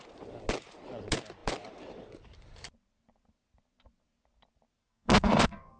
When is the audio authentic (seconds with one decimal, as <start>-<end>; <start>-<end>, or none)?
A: 0.0-4.8